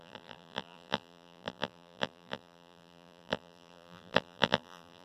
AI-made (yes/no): yes